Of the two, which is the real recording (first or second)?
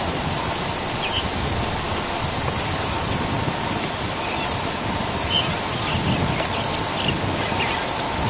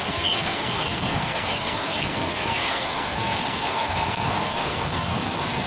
first